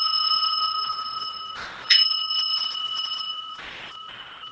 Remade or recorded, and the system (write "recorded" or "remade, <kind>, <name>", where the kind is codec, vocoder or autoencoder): remade, vocoder, Vocos